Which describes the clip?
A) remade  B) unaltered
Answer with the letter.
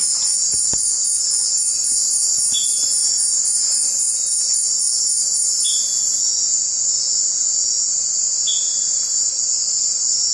A